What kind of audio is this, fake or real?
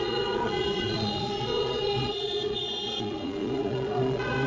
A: fake